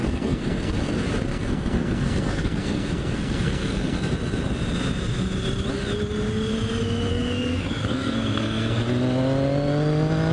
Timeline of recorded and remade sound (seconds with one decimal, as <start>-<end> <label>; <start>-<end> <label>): 0.0-0.9 remade; 0.9-1.3 recorded; 1.3-4.1 remade; 4.1-7.1 recorded; 7.1-8.8 remade; 8.8-10.3 recorded